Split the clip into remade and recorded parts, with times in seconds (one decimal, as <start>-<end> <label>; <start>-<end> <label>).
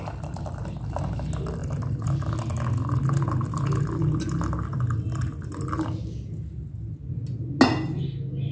0.0-8.5 recorded